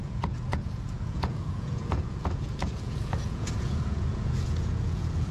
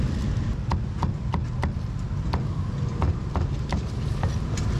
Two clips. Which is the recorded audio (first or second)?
second